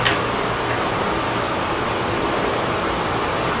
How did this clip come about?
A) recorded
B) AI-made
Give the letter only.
A